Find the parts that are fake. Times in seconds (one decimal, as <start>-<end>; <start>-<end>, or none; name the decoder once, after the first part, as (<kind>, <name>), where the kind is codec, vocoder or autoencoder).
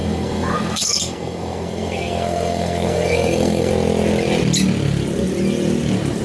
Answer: 0.0-3.7 (codec, SNAC)